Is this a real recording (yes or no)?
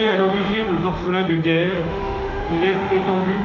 no